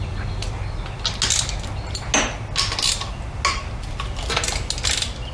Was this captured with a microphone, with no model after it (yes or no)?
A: yes